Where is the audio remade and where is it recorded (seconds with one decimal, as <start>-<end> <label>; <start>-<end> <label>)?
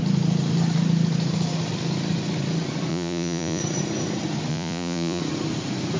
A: 0.0-2.9 recorded; 2.9-3.6 remade; 3.6-4.5 recorded; 4.5-5.2 remade; 5.2-6.0 recorded